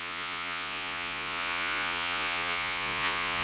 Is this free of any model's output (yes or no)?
no